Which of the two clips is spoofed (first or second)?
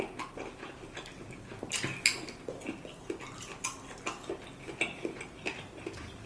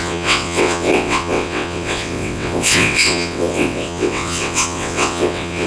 second